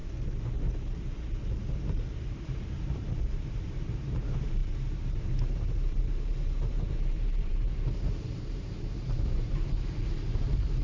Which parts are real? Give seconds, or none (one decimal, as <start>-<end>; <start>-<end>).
0.0-2.1